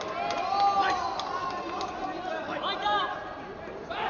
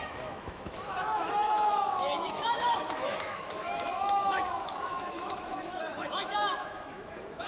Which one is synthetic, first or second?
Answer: second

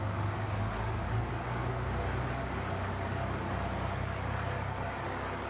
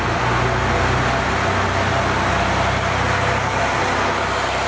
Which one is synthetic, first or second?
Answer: first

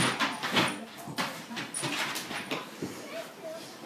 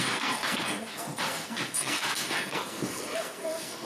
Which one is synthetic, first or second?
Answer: second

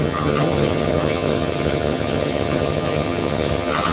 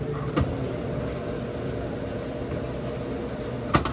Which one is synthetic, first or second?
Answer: first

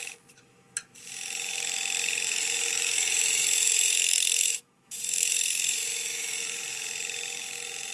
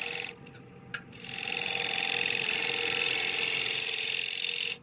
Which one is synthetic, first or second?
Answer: first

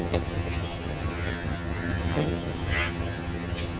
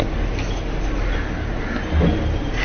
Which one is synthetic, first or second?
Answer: first